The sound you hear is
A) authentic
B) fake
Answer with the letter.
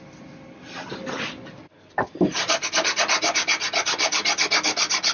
B